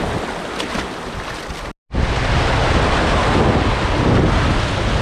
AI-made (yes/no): no